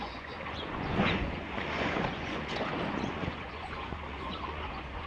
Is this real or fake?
fake